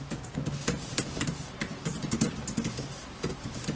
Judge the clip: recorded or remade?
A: recorded